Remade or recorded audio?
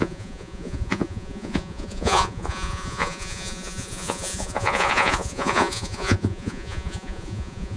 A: remade